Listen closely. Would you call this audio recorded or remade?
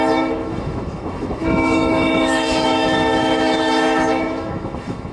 remade